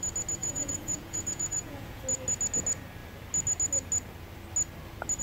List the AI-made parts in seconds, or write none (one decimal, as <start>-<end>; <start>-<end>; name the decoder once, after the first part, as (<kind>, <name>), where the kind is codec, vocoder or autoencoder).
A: 0.4-2.0 (vocoder, Vocos)